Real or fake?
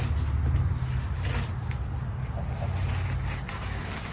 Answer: real